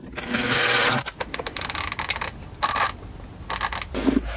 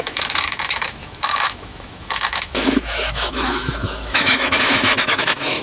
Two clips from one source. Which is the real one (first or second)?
first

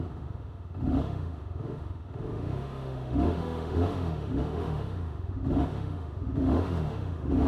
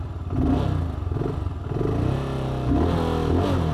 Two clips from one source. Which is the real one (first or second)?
second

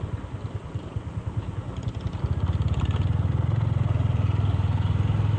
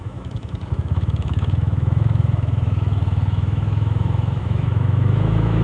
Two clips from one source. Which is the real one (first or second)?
first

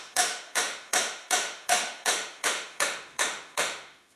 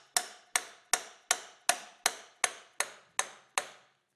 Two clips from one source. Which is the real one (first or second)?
second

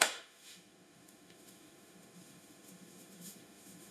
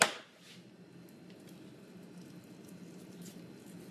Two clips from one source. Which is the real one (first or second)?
second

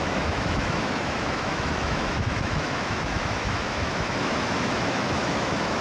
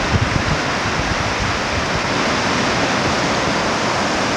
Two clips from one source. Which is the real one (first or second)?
second